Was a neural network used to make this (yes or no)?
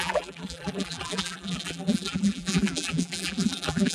yes